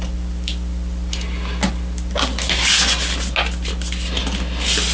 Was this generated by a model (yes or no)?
no